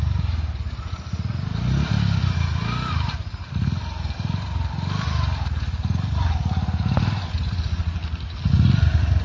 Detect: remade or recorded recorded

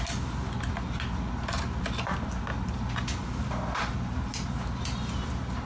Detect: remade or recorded recorded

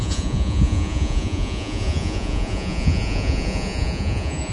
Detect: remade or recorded remade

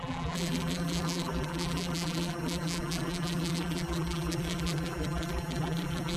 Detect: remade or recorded remade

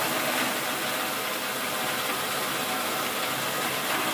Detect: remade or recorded recorded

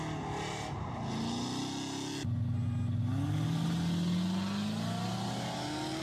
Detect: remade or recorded recorded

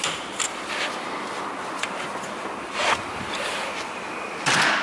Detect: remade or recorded recorded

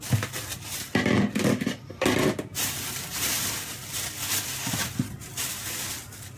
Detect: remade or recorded recorded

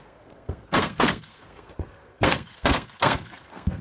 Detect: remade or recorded remade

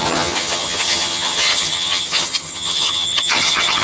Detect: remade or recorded remade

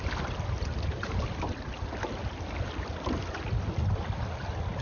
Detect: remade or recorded recorded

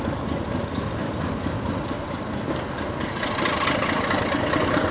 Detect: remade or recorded recorded